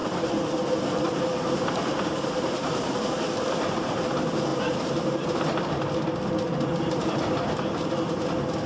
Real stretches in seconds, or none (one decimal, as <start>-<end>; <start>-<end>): 3.0-4.5; 5.7-8.7